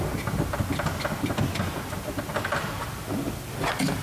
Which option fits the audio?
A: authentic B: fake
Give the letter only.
A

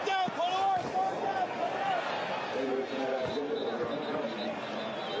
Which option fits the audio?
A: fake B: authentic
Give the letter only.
B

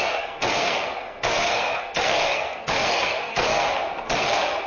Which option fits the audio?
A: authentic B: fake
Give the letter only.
B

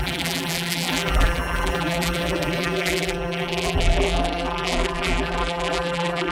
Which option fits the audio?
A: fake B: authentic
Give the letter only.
A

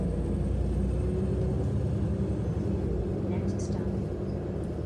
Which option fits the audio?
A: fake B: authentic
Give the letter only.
B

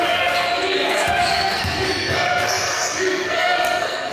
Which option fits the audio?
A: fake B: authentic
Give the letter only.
A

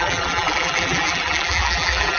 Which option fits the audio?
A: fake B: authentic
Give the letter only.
A